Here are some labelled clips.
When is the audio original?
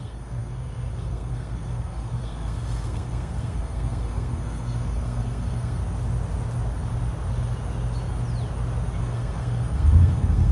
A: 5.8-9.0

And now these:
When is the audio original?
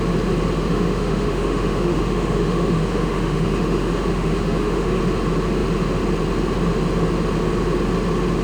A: 0.0-0.6; 5.0-8.4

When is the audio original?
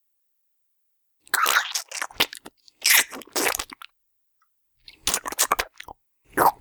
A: 0.0-6.6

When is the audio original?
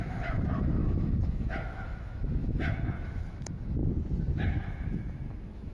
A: 3.8-4.6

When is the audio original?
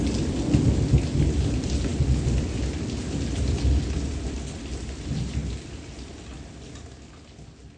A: 0.0-7.8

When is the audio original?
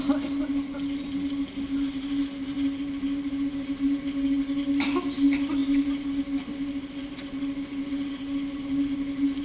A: 0.0-9.4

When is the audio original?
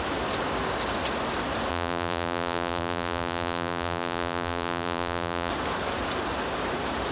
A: 0.0-1.7; 5.5-7.1